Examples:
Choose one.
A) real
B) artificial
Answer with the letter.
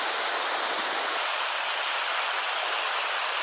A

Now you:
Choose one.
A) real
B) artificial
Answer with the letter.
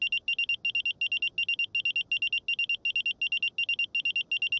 A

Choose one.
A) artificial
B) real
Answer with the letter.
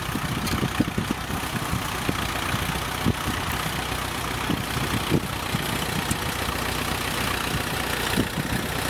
B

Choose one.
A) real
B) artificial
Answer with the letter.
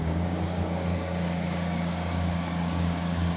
B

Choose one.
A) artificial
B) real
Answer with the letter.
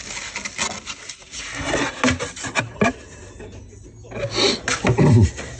B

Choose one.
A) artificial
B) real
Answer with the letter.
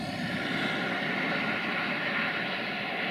B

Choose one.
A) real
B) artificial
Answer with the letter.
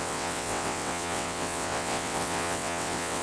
B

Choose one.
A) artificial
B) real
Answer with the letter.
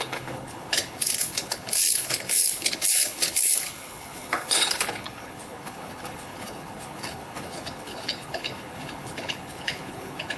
A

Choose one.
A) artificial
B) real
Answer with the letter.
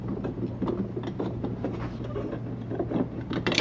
B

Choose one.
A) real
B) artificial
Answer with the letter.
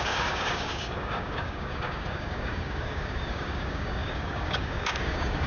B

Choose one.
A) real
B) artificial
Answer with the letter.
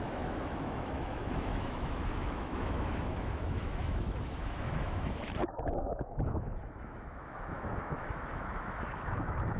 B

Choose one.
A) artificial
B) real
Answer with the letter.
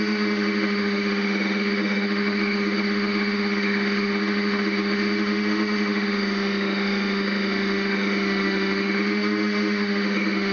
A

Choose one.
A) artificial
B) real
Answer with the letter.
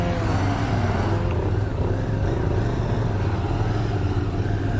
B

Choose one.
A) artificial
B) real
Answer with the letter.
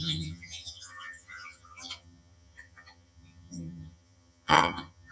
A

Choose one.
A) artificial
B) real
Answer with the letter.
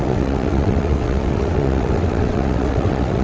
A